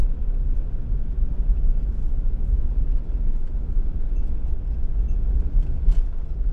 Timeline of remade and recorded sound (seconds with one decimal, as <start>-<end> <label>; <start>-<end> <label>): 0.0-1.1 recorded; 1.1-4.2 remade; 4.2-6.5 recorded